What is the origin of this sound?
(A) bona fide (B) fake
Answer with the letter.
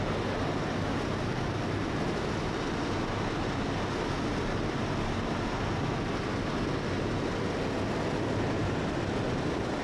A